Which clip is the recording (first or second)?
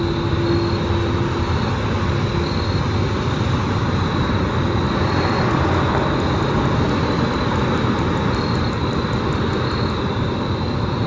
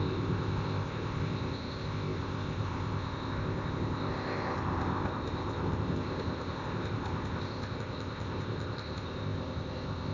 first